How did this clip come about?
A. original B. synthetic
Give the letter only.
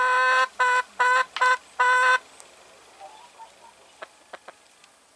A